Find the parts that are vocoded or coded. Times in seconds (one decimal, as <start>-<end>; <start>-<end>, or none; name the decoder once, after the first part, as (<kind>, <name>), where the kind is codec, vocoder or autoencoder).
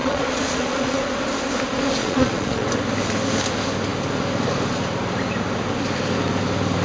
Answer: 0.0-1.0 (vocoder, Vocos); 2.0-2.7